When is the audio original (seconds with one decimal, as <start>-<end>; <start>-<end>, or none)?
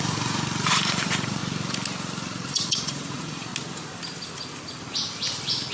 1.4-2.5; 3.5-5.7